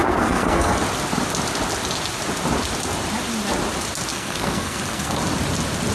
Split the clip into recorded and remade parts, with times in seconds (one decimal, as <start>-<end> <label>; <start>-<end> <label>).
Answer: 0.0-0.8 remade; 0.8-4.1 recorded; 4.1-5.2 remade; 5.2-5.9 recorded